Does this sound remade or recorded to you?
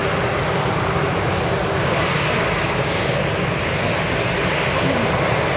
recorded